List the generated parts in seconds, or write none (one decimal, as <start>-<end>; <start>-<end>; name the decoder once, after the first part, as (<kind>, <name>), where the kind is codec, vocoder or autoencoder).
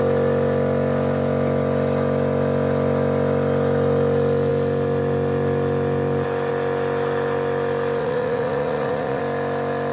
8.0-9.2 (vocoder, Vocos)